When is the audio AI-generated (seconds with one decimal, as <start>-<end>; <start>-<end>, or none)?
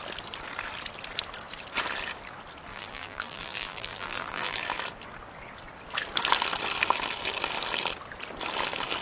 2.7-4.6